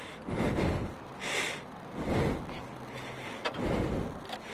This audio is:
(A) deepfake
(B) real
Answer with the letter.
B